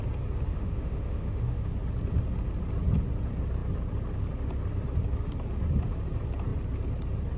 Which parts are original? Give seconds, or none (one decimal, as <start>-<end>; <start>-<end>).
0.0-0.5; 1.7-7.4